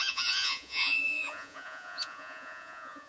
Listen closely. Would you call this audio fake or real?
fake